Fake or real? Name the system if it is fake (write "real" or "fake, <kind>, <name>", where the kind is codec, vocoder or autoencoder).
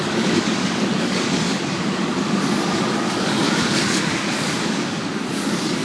fake, codec, DAC